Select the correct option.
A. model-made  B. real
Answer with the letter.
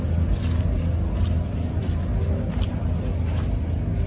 B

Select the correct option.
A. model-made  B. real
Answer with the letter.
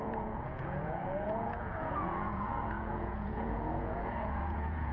A